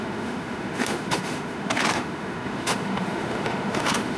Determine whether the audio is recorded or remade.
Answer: remade